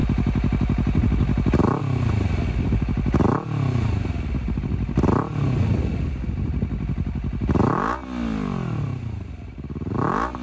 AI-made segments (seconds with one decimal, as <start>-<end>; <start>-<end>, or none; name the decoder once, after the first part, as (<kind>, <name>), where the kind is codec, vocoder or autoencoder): none